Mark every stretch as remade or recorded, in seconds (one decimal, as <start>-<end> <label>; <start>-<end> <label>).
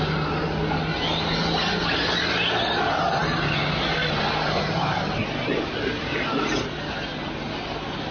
0.0-8.1 recorded